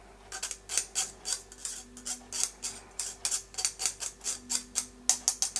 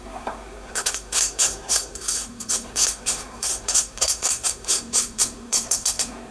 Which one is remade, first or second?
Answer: second